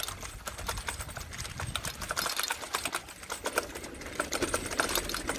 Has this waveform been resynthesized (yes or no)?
no